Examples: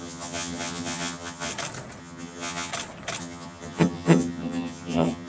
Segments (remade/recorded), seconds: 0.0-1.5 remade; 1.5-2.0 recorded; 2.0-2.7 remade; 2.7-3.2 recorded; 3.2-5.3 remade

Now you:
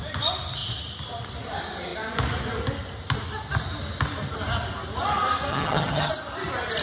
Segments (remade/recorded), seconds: 0.0-5.5 recorded; 5.5-6.1 remade; 6.1-6.8 recorded

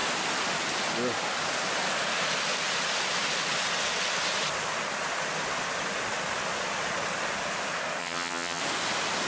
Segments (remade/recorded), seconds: 0.0-8.0 recorded; 8.0-8.6 remade; 8.6-9.3 recorded

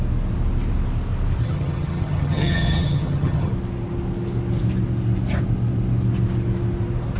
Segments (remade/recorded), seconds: 0.0-1.4 recorded; 1.4-3.5 remade; 3.5-7.2 recorded

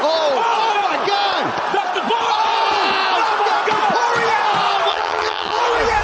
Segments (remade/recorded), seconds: 0.0-4.9 recorded; 4.9-5.6 remade; 5.6-6.0 recorded

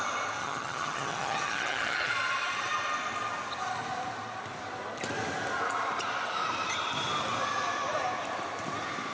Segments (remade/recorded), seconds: 0.0-0.4 recorded; 0.4-2.1 remade; 2.1-9.1 recorded